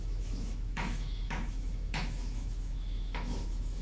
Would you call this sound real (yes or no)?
no